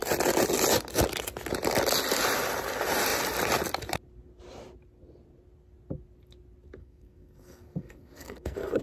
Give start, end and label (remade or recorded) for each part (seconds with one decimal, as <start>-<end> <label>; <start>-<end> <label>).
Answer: 0.0-6.8 recorded; 6.8-8.8 remade